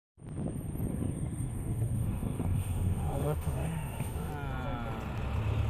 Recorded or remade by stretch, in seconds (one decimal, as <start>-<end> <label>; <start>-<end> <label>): 0.0-0.9 recorded; 0.9-4.3 remade; 4.3-5.7 recorded